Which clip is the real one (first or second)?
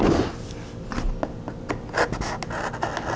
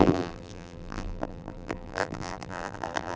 first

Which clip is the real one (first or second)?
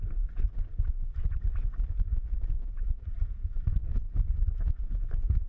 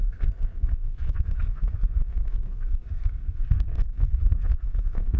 first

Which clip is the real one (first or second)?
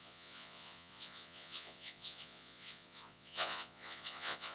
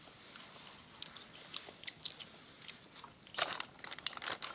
second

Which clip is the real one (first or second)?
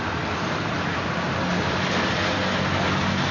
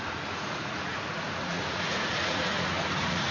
first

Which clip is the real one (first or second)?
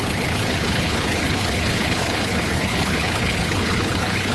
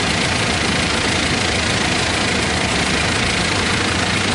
second